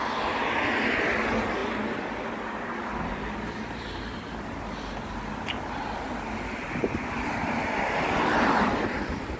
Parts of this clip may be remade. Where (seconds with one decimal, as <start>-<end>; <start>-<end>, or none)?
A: none